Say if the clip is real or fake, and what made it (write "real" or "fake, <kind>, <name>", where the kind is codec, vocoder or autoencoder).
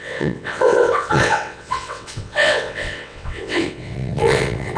fake, vocoder, WaveNeXt